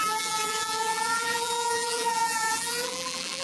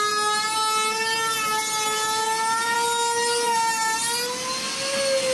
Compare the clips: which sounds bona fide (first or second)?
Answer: second